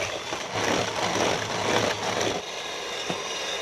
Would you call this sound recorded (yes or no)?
yes